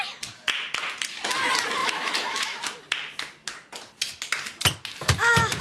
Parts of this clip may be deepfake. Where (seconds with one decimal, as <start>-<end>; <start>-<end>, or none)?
1.8-2.6